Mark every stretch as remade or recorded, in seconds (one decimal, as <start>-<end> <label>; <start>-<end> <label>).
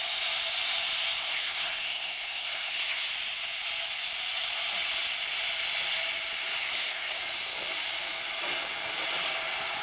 0.0-1.2 recorded; 1.2-3.1 remade; 3.1-6.6 recorded; 6.6-7.2 remade; 7.2-9.8 recorded